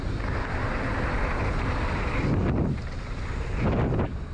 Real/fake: real